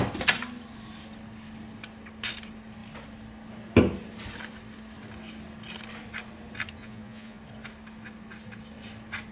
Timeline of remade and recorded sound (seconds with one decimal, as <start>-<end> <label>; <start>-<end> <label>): 0.0-6.8 recorded; 6.8-7.4 remade; 7.4-9.3 recorded